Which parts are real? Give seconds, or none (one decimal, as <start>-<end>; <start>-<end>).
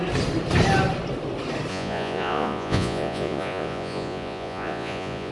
0.0-1.7